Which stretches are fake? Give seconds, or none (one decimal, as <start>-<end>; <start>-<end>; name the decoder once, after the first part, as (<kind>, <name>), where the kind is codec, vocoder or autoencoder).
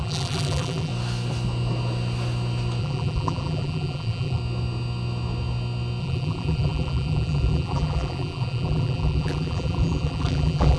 0.0-0.9 (vocoder, BigVGAN v2); 2.8-4.4; 6.0-10.8